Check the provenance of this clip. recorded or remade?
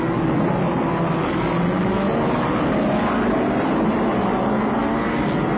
recorded